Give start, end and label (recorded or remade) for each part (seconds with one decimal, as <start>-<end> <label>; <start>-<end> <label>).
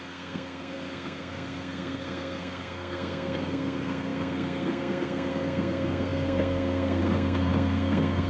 0.0-8.3 remade